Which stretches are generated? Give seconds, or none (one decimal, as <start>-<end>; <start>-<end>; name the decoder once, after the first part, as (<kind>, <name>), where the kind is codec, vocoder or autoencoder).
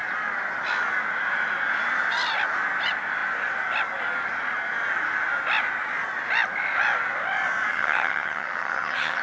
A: 7.7-9.2 (vocoder, HiFi-GAN)